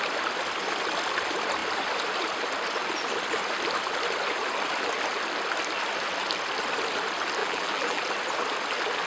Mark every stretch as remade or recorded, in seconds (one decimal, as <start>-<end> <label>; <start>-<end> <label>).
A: 0.0-7.4 recorded; 7.4-8.0 remade; 8.0-9.1 recorded